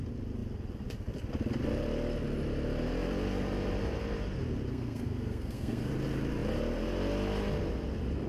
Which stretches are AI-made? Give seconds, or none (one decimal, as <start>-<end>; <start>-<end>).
4.7-5.9